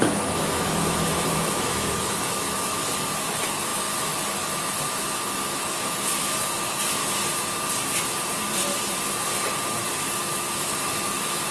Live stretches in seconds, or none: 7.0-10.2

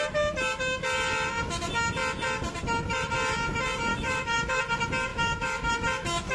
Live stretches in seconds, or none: 0.0-3.9; 4.6-5.1; 5.7-6.3

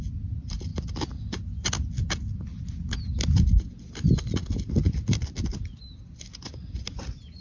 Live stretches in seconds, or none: 0.0-7.4

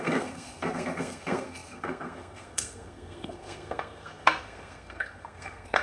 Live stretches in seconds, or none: none